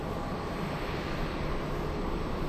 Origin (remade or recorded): recorded